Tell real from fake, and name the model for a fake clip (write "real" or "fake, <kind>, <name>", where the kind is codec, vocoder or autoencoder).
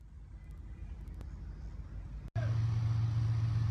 real